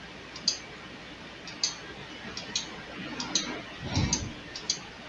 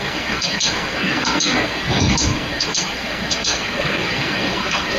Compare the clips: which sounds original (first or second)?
first